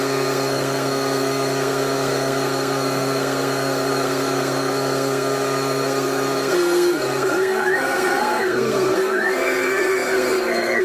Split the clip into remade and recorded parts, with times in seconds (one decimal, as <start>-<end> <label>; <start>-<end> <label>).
0.0-10.8 remade